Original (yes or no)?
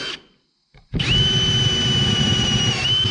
yes